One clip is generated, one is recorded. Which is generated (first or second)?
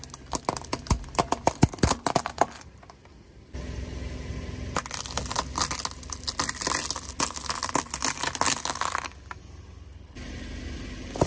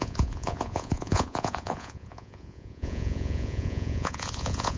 second